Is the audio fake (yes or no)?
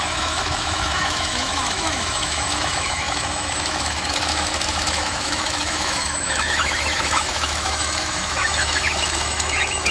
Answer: yes